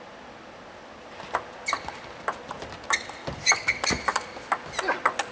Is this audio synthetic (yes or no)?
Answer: no